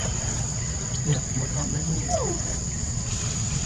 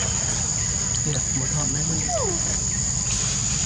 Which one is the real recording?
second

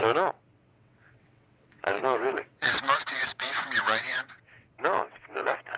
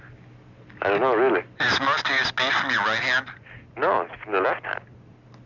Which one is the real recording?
second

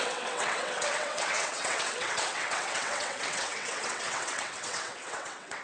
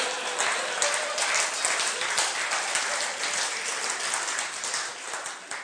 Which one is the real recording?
second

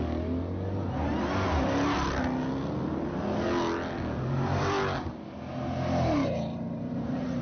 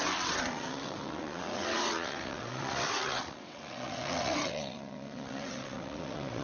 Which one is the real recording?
first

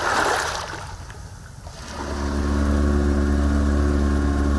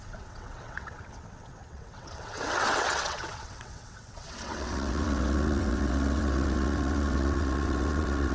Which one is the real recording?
first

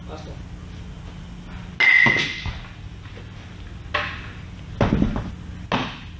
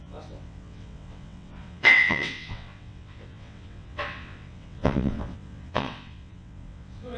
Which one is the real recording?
first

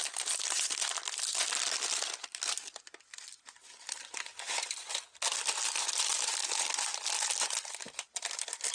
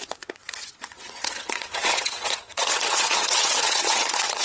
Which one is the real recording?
first